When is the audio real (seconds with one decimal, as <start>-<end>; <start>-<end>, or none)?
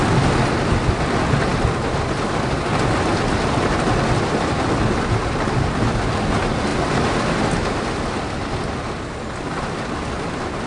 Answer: 0.0-10.7